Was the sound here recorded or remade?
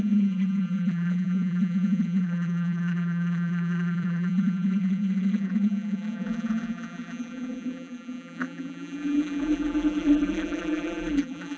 remade